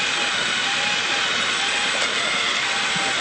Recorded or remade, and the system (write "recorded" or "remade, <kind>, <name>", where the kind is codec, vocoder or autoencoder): recorded